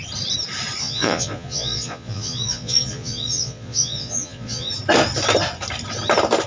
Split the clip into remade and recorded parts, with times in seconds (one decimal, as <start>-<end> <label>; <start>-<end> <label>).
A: 0.0-0.8 recorded; 0.8-4.7 remade; 4.7-6.5 recorded

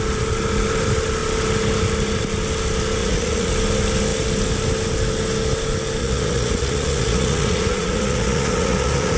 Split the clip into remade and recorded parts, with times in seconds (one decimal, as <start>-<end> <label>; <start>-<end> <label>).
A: 0.0-3.0 recorded; 3.0-3.5 remade; 3.5-6.0 recorded; 6.0-9.2 remade

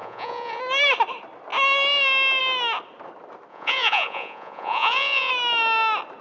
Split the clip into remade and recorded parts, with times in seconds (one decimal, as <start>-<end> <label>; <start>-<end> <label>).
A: 0.0-0.6 remade; 0.6-3.5 recorded; 3.5-5.3 remade; 5.3-6.2 recorded

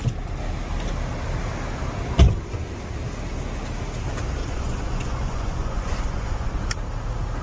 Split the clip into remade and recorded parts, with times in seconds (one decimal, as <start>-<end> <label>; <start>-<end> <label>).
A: 0.0-4.4 recorded; 4.4-6.6 remade; 6.6-7.4 recorded

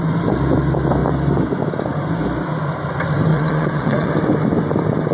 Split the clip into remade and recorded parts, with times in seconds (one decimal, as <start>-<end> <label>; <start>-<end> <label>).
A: 0.0-3.3 recorded; 3.3-4.1 remade; 4.1-5.1 recorded

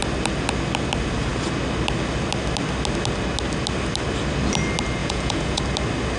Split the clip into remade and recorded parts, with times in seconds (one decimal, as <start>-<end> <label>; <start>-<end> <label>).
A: 0.0-5.0 recorded; 5.0-5.6 remade; 5.6-6.2 recorded

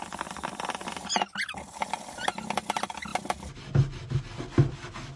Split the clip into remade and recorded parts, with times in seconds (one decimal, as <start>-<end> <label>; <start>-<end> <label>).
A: 0.0-5.2 recorded